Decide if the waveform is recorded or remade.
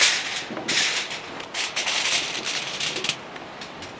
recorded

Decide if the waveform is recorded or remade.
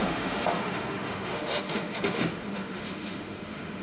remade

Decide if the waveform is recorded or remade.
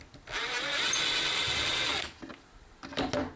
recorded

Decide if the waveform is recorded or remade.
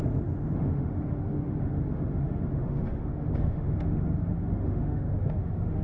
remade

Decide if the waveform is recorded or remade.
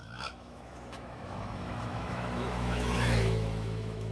remade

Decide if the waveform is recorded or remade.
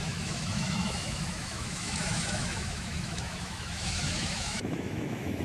remade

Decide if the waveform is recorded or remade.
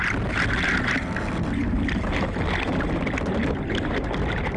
recorded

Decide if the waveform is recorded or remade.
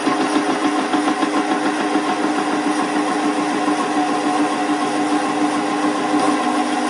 recorded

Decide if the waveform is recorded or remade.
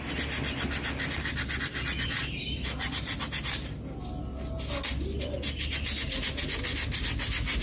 recorded